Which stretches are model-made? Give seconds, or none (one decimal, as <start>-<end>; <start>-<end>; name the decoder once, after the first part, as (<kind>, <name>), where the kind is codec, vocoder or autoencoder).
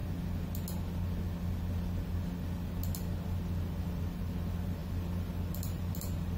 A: 3.8-6.4 (vocoder, BigVGAN v2)